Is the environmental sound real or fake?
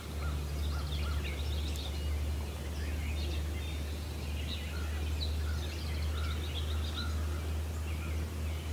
real